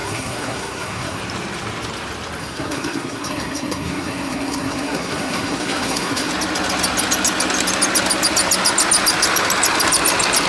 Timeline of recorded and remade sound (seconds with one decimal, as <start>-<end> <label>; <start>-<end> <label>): 0.0-1.2 remade; 1.2-2.4 recorded; 2.4-6.3 remade; 6.3-10.5 recorded